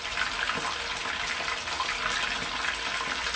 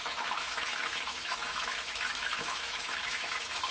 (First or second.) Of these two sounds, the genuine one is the first